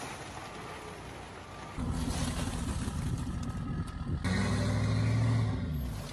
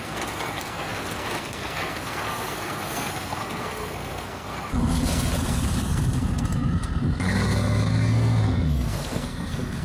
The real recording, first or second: first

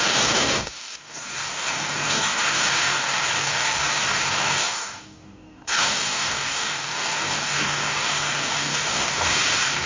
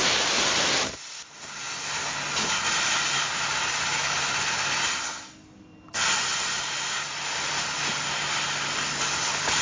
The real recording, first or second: second